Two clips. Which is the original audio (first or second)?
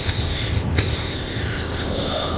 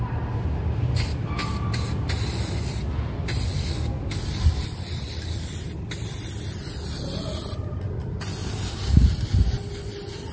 second